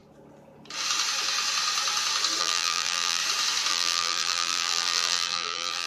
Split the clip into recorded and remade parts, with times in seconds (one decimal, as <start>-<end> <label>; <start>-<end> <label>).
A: 0.0-2.4 recorded; 2.4-3.2 remade; 3.2-3.7 recorded; 3.7-5.9 remade